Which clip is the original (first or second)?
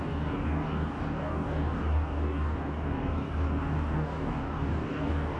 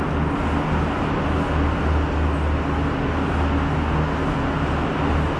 second